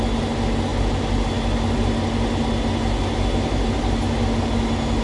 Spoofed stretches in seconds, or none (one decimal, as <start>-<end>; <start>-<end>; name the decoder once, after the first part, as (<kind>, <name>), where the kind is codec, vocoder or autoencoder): none

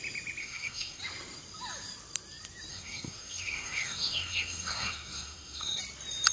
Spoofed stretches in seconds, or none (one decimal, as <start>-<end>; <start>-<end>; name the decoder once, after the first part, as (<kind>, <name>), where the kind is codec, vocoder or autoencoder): 0.4-1.0 (codec, SNAC); 2.7-5.8